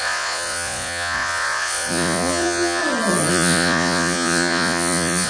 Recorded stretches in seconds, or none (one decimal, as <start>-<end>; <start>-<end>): 2.8-3.3